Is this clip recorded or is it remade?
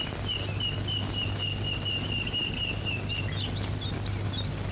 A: recorded